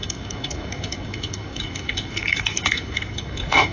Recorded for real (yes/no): no